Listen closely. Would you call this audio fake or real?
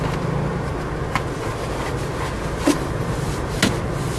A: real